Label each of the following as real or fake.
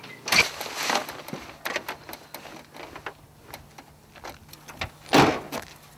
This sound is real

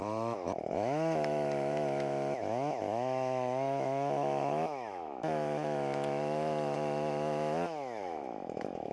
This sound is fake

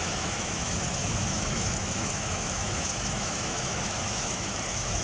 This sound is fake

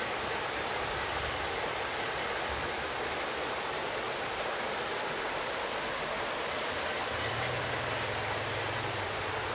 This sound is real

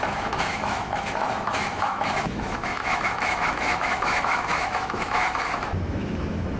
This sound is fake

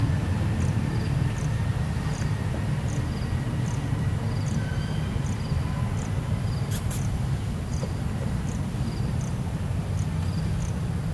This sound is real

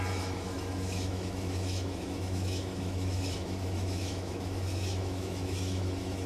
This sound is fake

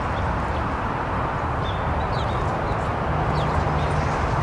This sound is real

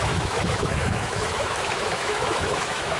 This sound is fake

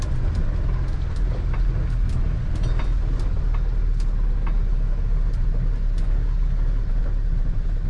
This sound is real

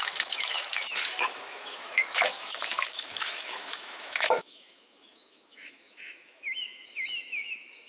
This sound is fake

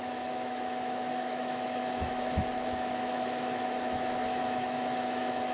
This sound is fake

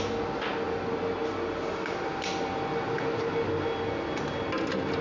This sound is real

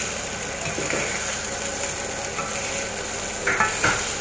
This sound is real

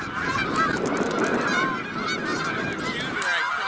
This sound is real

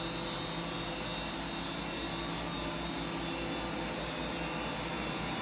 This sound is real